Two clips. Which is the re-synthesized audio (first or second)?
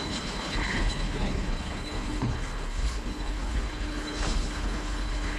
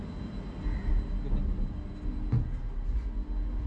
first